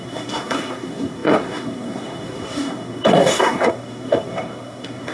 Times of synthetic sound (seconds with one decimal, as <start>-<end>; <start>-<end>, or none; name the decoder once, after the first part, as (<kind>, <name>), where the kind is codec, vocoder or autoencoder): 0.0-5.1 (codec, SNAC)